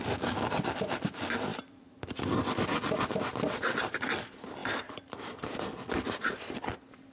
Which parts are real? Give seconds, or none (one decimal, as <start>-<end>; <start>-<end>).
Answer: 0.0-1.5; 2.4-4.6; 5.3-7.1